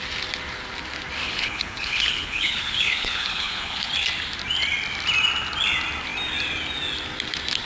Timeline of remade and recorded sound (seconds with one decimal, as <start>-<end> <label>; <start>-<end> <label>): 0.0-1.2 recorded; 1.2-3.9 remade; 3.9-7.7 recorded